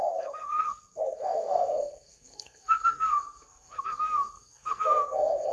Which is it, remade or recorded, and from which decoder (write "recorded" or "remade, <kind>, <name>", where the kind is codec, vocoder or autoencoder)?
remade, codec, SNAC